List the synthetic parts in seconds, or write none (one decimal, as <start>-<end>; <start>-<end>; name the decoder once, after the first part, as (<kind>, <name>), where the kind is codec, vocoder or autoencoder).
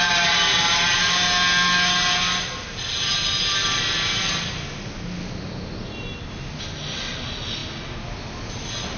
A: none